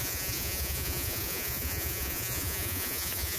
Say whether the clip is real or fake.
fake